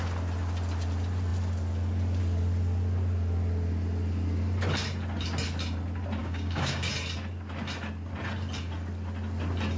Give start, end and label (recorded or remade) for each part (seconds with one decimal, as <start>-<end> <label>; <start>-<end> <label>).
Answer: 0.0-6.2 recorded; 6.2-6.9 remade; 6.9-9.8 recorded